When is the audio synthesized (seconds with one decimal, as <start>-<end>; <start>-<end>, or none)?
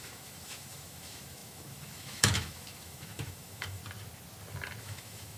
0.0-3.8; 4.8-5.4